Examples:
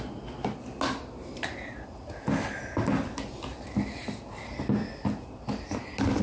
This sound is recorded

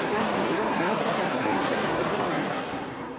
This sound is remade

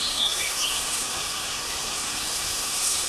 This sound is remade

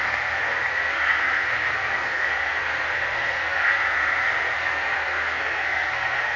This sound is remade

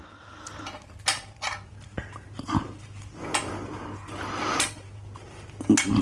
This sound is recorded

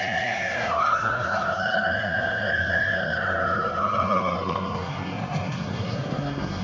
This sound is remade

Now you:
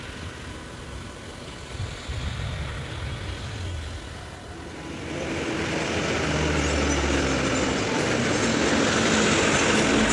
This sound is recorded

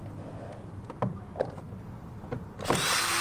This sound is recorded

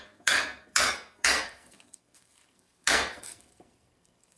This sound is remade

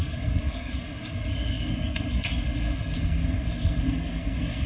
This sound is remade